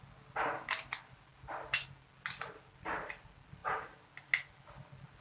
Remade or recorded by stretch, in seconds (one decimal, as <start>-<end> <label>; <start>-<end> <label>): 0.0-5.2 recorded